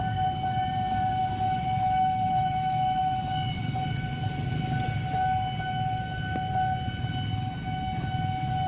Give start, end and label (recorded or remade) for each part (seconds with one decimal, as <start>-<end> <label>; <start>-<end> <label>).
0.0-1.2 recorded; 1.2-3.2 remade; 3.2-8.7 recorded